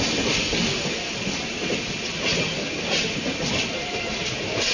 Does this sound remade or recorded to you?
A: recorded